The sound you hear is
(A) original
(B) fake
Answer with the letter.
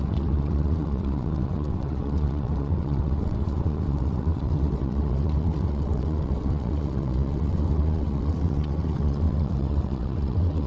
B